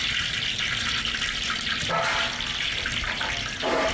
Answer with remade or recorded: recorded